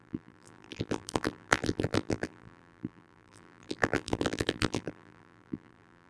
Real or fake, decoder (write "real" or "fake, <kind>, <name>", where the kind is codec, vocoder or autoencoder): fake, vocoder, BigVGAN v2